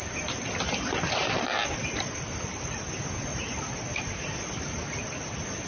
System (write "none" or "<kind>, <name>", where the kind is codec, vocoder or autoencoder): none